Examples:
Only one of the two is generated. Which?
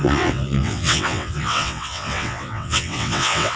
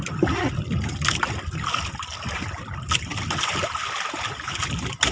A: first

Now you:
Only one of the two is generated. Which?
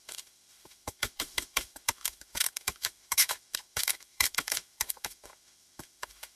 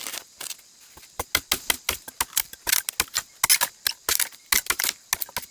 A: first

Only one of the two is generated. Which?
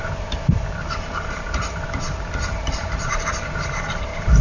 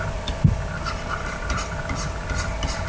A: first